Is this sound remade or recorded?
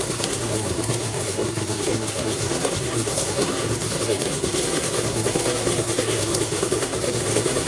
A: remade